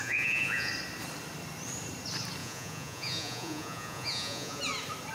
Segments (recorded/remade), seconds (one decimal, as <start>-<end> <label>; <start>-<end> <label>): 0.0-0.7 remade; 0.7-2.4 recorded; 2.4-4.6 remade; 4.6-5.1 recorded